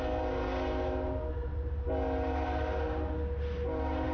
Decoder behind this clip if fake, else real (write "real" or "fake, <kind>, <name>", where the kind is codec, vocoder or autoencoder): real